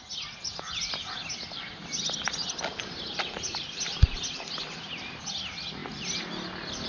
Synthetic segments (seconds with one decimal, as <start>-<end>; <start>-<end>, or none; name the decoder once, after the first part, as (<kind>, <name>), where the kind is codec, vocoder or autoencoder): none